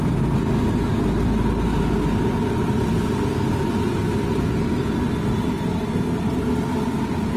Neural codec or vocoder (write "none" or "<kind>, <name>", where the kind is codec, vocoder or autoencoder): none